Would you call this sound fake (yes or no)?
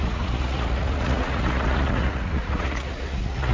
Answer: yes